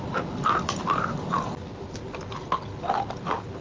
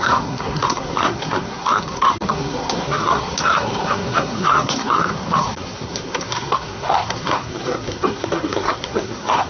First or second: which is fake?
second